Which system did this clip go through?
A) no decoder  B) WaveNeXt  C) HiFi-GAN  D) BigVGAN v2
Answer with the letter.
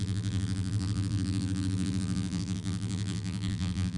D